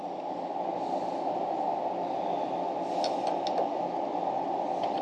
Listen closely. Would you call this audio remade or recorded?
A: recorded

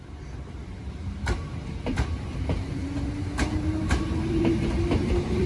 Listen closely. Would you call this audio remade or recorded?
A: remade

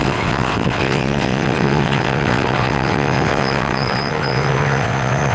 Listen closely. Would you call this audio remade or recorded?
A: remade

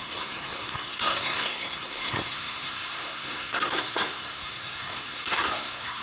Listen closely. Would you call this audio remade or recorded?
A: remade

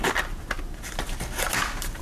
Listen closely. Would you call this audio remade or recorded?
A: recorded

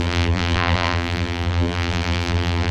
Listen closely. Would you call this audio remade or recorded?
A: remade